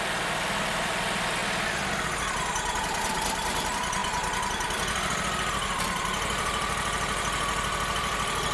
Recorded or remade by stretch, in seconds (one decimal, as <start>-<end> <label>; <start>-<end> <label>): 0.0-1.4 remade; 1.4-2.8 recorded; 2.8-4.0 remade; 4.0-4.5 recorded; 4.5-8.5 remade